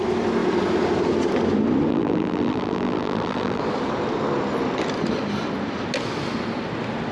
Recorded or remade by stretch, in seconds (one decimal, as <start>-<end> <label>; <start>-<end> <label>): 0.0-1.9 recorded; 1.9-3.6 remade; 3.6-7.1 recorded